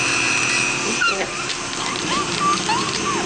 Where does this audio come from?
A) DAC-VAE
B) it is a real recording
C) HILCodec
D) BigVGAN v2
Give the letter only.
D